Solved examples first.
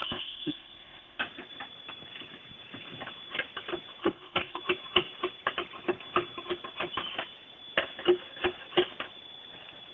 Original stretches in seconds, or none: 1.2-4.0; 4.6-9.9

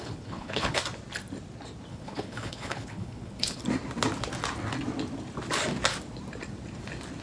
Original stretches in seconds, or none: 0.8-1.9; 3.6-7.2

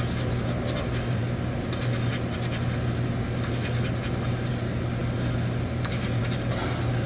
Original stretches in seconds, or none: 0.0-7.1

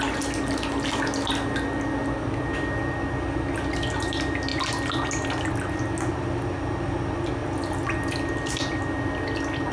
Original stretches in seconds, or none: 0.0-9.7